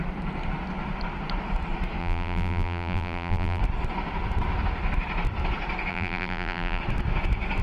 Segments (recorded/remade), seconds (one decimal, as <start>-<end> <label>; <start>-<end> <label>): 0.0-2.0 recorded; 2.0-3.6 remade; 3.6-5.9 recorded; 5.9-6.8 remade; 6.8-7.6 recorded